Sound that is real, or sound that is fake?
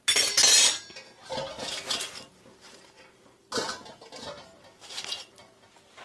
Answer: real